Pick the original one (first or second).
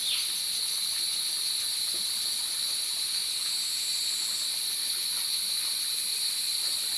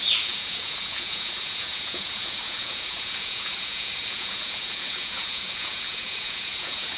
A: first